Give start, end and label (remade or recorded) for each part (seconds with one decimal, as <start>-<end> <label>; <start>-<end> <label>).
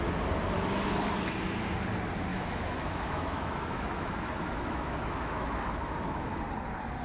0.0-2.3 recorded; 2.3-6.4 remade; 6.4-7.0 recorded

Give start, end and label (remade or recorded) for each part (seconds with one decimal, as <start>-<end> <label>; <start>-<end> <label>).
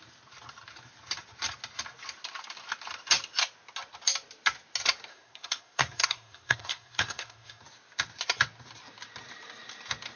0.0-5.1 recorded; 5.1-7.6 remade; 7.6-10.2 recorded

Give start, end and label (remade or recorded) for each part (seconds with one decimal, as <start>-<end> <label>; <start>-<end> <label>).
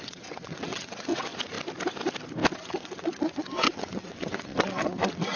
0.0-1.3 remade; 1.3-2.5 recorded; 2.5-5.4 remade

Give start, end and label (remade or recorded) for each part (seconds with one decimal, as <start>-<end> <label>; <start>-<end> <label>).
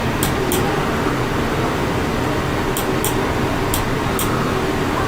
0.0-5.1 recorded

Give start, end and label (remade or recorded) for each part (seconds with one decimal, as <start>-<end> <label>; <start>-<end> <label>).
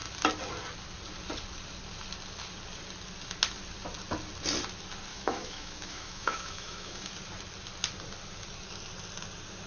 0.0-5.1 recorded; 5.1-7.1 remade; 7.1-9.7 recorded